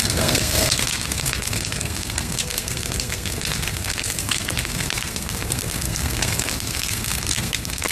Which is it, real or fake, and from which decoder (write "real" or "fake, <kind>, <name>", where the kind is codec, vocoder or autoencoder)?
fake, codec, SNAC